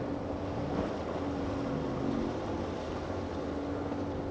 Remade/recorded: recorded